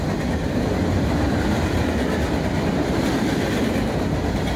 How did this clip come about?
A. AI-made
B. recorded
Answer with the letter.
B